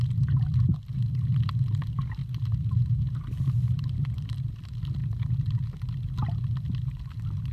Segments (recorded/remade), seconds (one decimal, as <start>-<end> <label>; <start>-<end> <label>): 0.0-7.5 recorded